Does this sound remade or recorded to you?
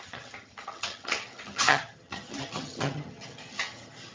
remade